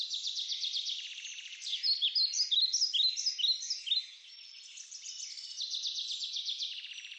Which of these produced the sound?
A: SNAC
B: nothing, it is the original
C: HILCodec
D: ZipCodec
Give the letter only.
B